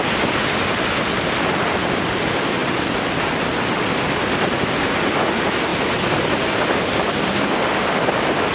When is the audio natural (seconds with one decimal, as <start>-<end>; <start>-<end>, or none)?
0.0-8.5